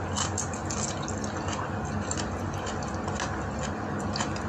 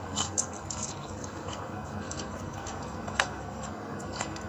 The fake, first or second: second